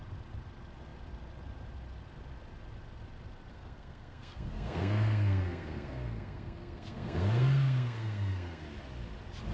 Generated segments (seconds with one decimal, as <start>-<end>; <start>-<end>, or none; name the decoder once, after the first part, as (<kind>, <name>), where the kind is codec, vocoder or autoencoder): 3.5-8.6 (codec, SNAC)